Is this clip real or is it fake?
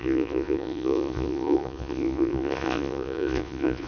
fake